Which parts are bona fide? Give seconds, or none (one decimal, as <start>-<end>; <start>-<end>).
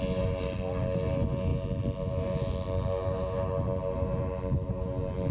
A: 0.0-5.3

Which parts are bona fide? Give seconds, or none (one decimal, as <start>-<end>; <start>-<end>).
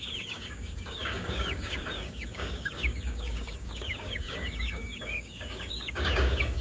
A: none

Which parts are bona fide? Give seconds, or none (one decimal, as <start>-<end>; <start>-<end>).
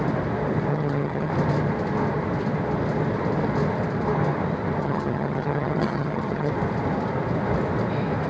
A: 0.0-0.7; 1.3-4.8; 6.5-8.3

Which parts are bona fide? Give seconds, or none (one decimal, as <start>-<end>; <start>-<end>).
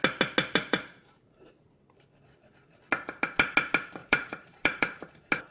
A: 0.0-0.6; 1.5-4.0; 5.1-5.5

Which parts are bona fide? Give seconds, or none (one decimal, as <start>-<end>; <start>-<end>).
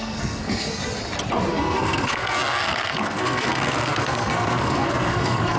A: 0.8-1.5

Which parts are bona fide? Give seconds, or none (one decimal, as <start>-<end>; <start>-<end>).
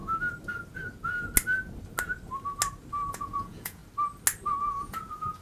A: 0.0-3.1; 3.8-4.6